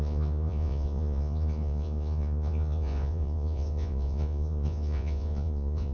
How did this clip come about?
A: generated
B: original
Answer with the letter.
A